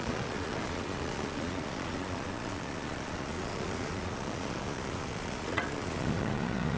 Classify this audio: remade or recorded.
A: remade